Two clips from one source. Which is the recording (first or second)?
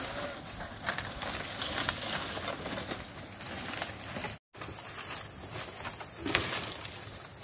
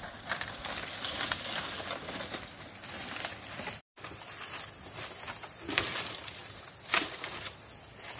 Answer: first